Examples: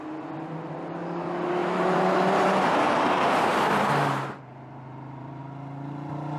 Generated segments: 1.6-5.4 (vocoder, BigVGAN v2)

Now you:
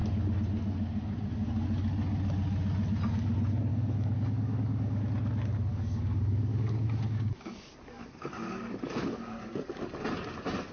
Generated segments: 3.7-5.0 (codec, DAC); 5.7-9.5

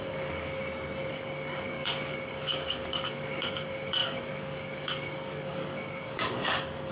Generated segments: 0.0-0.6 (codec, DAC); 1.1-6.9

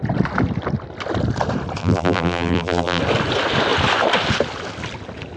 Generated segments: 1.8-3.0 (vocoder, BigVGAN v2)

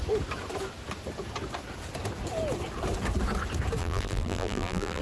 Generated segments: 3.8-5.0 (vocoder, BigVGAN v2)

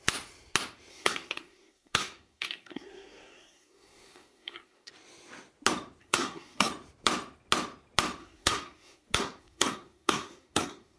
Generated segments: 0.9-4.9 (codec, SNAC); 6.0-6.7; 8.2-11.0

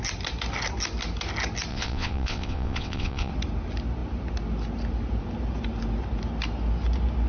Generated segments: 1.7-3.3 (vocoder, WaveNeXt)

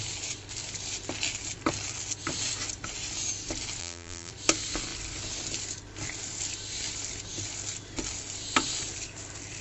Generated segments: 3.8-4.3 (vocoder, BigVGAN v2)